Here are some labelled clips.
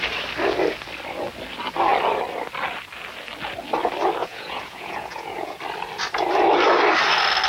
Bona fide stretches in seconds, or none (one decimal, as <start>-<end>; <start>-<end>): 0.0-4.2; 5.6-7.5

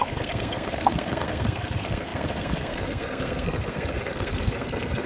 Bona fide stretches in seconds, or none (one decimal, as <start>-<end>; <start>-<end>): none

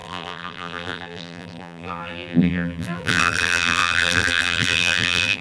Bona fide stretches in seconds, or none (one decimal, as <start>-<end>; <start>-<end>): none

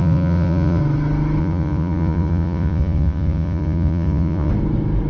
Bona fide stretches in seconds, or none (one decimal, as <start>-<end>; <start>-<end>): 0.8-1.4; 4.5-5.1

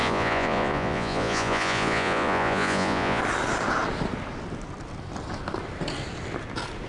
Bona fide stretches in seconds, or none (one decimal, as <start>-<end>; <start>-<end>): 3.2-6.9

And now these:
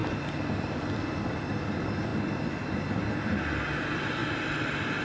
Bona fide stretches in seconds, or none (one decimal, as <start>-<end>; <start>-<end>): 0.0-5.0